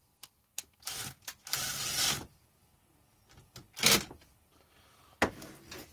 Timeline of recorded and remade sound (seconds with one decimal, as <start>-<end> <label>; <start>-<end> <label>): 0.0-0.8 remade; 0.8-5.9 recorded